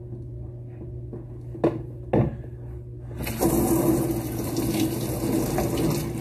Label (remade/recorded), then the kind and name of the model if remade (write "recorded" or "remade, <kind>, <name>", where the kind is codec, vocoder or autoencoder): recorded